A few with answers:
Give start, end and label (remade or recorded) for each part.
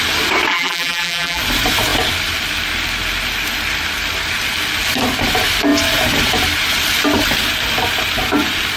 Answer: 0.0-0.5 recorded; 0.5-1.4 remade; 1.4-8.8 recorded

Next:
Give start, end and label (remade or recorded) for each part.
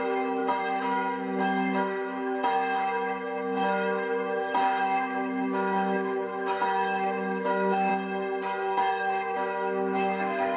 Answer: 0.0-7.9 remade; 7.9-8.9 recorded; 8.9-10.6 remade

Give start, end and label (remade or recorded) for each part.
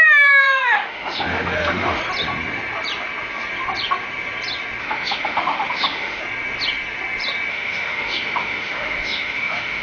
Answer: 0.0-2.0 remade; 2.0-4.8 recorded; 4.8-6.2 remade; 6.2-7.5 recorded; 7.5-9.8 remade